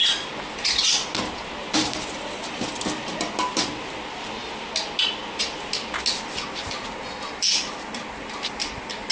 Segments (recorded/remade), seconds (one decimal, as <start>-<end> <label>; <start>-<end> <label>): 0.0-9.1 recorded